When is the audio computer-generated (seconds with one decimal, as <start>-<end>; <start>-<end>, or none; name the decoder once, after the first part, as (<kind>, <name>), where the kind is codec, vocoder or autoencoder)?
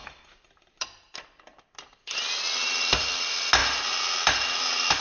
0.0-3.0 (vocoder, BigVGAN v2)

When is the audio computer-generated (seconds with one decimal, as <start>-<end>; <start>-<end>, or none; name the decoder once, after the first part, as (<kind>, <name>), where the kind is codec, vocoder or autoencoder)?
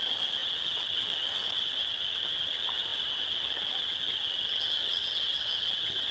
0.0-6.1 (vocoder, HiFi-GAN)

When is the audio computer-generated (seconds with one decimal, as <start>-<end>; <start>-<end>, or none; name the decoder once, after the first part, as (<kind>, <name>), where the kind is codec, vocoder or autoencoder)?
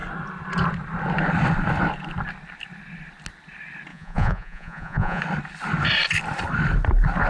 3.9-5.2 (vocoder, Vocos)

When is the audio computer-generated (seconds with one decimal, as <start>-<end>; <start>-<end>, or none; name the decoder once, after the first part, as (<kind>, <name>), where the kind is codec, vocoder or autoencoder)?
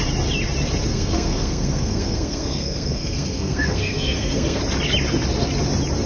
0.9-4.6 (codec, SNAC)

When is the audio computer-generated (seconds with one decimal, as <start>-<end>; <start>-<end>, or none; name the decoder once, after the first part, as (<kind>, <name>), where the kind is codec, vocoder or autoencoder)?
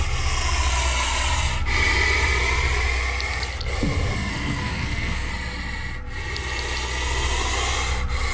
4.3-5.3 (codec, SNAC)